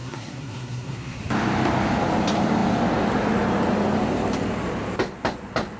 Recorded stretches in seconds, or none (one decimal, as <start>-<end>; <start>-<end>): 1.2-5.8